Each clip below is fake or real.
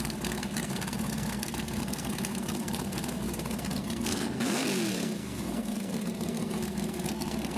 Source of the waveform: fake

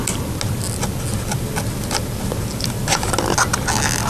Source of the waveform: real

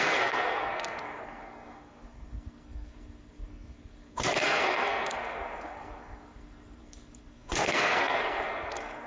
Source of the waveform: fake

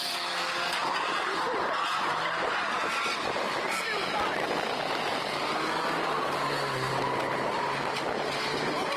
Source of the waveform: real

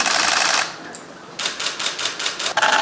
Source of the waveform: real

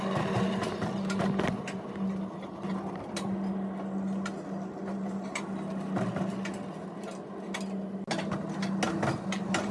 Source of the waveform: real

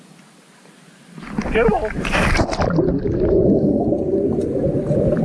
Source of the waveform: real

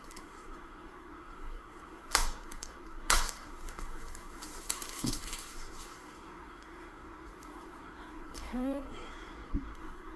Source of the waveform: fake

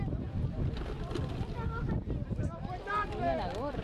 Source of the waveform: real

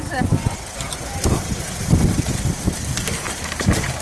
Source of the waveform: real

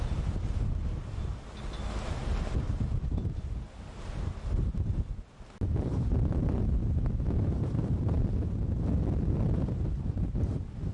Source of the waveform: real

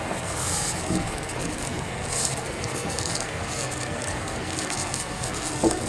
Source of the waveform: fake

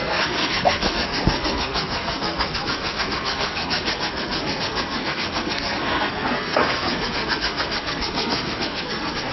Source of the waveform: fake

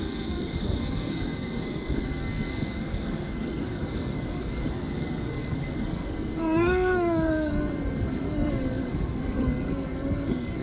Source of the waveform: fake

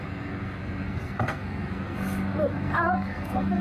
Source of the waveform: fake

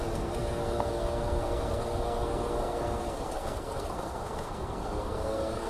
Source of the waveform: fake